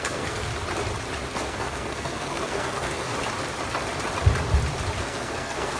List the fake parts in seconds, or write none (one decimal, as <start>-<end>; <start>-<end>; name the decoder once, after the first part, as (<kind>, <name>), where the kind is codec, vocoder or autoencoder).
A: 0.0-0.5 (codec, SNAC); 1.3-3.1; 5.0-5.8